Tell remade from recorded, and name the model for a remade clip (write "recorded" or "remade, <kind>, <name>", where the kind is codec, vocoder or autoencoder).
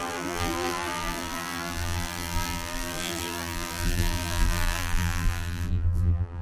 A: remade, vocoder, BigVGAN v2